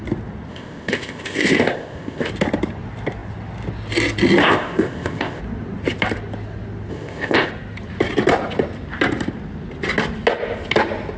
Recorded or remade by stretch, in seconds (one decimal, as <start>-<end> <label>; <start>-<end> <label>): 0.0-0.5 recorded; 0.5-2.3 remade; 2.3-4.4 recorded; 4.4-5.4 remade; 5.4-6.9 recorded; 6.9-7.5 remade; 7.5-11.2 recorded